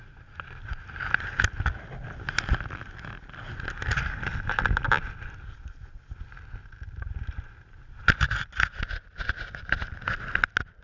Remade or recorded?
recorded